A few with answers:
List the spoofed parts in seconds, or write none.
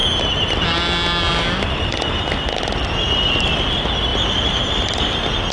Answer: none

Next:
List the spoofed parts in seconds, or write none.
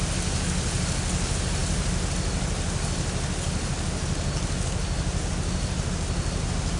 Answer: none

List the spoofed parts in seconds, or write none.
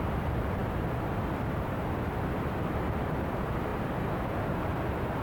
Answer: none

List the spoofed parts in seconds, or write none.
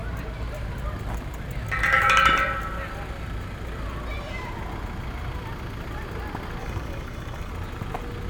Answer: 6.6-7.5 (codec, DAC)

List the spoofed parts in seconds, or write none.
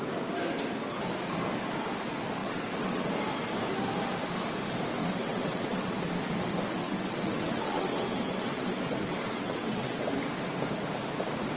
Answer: 2.4-3.0 (vocoder, WaveNeXt); 5.0-6.1; 6.8-10.1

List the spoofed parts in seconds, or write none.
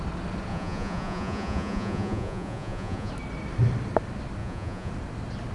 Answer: 0.5-3.1 (vocoder, Vocos); 4.4-4.9